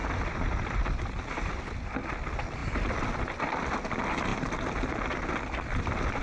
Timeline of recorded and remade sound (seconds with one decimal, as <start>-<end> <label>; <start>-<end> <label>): 0.0-2.1 remade; 2.1-6.2 recorded